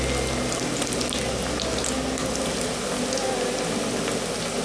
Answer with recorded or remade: recorded